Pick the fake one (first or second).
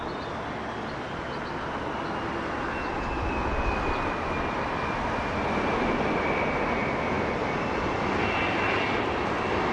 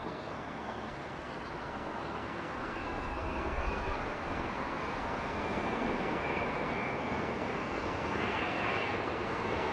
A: second